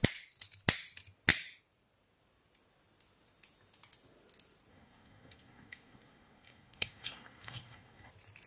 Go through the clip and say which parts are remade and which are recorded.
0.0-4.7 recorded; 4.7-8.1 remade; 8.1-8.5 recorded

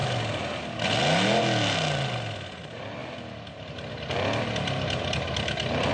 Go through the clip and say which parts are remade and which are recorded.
0.0-5.9 recorded

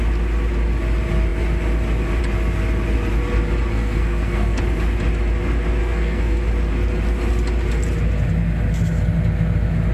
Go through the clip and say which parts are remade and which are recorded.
0.0-3.7 recorded; 3.7-4.6 remade; 4.6-5.8 recorded; 5.8-6.5 remade; 6.5-9.9 recorded

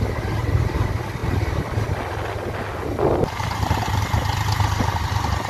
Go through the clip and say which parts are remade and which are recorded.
0.0-5.5 recorded

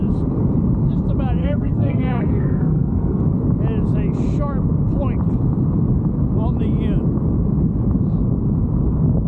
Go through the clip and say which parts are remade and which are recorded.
0.0-1.4 recorded; 1.4-3.2 remade; 3.2-9.3 recorded